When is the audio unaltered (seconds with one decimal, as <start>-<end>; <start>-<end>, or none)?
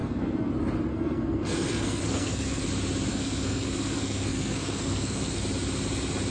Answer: 0.5-0.9; 2.7-3.1; 5.4-6.3